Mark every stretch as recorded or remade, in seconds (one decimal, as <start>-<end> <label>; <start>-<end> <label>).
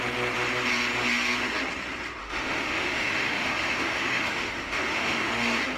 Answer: 0.0-2.2 recorded; 2.2-5.3 remade; 5.3-5.8 recorded